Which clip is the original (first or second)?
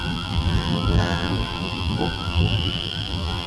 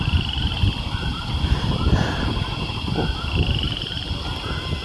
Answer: second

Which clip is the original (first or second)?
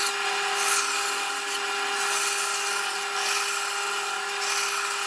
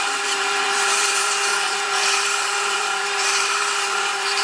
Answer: first